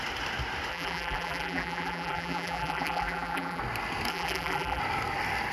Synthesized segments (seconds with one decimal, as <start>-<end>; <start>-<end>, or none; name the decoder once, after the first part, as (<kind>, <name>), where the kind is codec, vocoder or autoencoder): 0.7-3.6 (vocoder, BigVGAN v2); 4.1-4.8